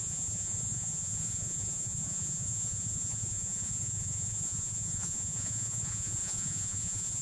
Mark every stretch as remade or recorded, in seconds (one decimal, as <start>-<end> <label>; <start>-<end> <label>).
0.0-7.2 remade